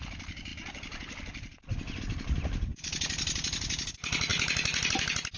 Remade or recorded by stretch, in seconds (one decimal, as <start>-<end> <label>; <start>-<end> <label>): 0.0-5.4 recorded